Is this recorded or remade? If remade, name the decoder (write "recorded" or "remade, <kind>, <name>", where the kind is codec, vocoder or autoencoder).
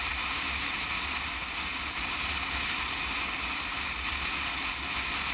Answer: recorded